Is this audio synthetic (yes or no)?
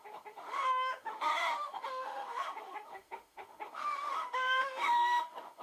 yes